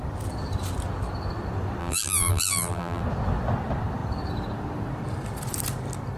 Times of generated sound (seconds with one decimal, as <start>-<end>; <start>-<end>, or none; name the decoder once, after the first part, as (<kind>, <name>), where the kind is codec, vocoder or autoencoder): 1.8-3.0 (vocoder, BigVGAN v2)